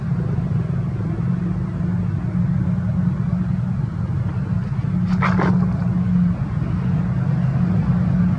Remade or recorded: recorded